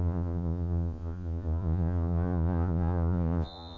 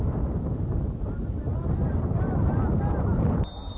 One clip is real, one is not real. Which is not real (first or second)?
first